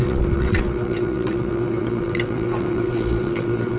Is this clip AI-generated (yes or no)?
yes